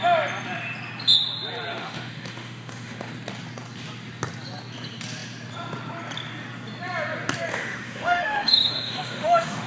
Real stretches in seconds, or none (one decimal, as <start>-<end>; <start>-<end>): 0.0-1.7; 3.1-7.5